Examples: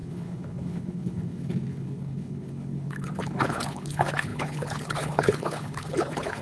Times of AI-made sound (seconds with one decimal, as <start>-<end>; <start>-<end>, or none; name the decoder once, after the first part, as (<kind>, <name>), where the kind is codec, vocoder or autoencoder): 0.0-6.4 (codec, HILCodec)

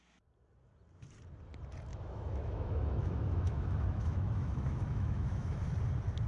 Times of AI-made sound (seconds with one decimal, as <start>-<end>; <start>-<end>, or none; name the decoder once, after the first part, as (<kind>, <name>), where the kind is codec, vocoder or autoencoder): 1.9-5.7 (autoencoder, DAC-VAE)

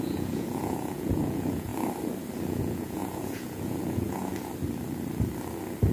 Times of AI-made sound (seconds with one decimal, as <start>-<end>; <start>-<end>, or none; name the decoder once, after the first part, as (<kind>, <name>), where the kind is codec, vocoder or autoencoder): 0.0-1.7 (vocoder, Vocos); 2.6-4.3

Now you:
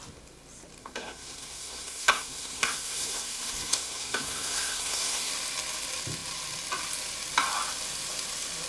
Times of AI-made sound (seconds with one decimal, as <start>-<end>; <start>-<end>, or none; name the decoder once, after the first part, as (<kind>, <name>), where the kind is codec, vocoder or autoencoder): 0.8-5.3 (codec, SNAC)

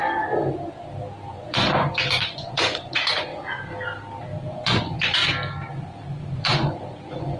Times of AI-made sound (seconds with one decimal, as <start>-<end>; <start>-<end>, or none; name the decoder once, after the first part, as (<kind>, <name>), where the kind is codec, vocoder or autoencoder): 1.3-3.3 (vocoder, Vocos); 4.5-5.2; 5.7-7.4

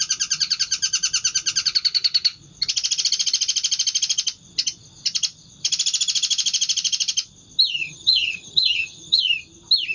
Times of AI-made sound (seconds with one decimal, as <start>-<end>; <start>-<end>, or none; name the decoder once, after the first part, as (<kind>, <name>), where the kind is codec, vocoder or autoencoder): 7.8-9.2 (vocoder, HiFi-GAN)